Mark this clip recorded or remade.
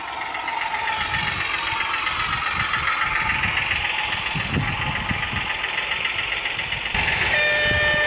recorded